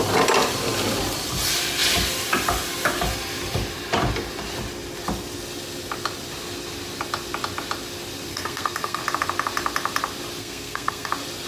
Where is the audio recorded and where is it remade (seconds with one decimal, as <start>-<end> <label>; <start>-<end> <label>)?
0.0-8.3 recorded; 8.3-9.0 remade; 9.0-10.4 recorded; 10.4-11.1 remade; 11.1-11.5 recorded